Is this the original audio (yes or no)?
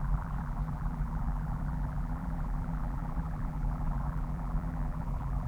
no